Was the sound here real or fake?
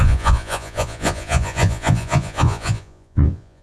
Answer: fake